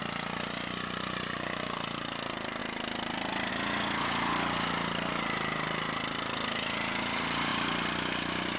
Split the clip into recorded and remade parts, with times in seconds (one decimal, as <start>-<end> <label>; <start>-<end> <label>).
0.0-8.6 recorded